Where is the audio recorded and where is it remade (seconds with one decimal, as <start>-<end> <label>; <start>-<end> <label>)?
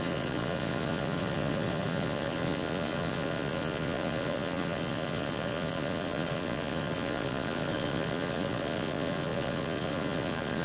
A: 0.0-10.6 remade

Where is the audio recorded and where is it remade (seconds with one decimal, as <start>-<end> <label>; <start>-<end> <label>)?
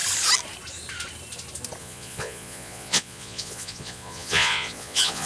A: 0.0-1.8 recorded; 1.8-5.3 remade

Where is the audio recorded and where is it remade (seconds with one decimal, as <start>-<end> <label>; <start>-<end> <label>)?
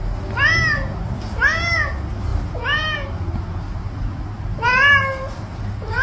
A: 0.0-6.0 recorded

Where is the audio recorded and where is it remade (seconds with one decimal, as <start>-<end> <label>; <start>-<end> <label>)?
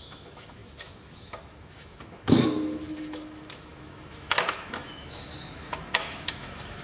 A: 0.0-6.8 remade